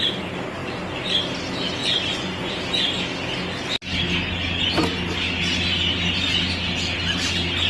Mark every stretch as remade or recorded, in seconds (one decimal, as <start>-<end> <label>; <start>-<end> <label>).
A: 0.0-1.8 recorded; 1.8-2.5 remade; 2.5-7.7 recorded